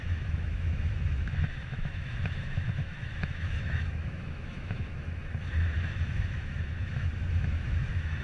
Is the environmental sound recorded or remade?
remade